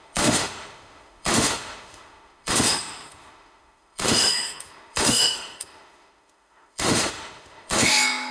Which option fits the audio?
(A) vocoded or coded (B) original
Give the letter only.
A